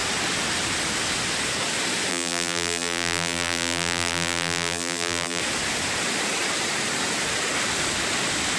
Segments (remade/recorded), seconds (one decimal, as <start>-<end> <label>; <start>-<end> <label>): 0.0-2.1 recorded; 2.1-5.4 remade; 5.4-8.6 recorded